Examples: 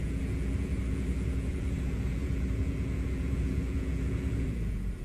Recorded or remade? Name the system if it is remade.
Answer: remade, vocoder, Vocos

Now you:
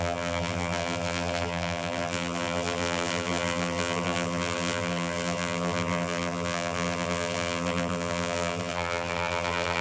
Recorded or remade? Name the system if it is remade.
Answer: remade, vocoder, BigVGAN v2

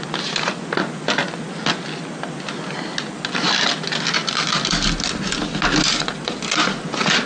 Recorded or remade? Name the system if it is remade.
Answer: recorded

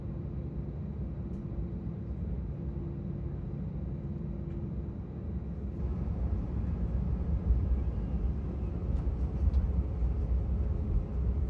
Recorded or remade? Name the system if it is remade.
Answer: recorded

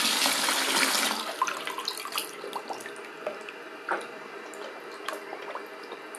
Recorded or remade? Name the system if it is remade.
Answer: recorded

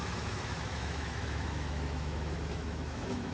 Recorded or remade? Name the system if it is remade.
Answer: remade, autoencoder, DAC-VAE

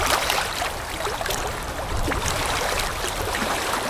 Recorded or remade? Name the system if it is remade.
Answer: remade, vocoder, BigVGAN v2